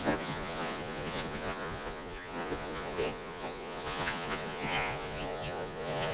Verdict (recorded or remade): remade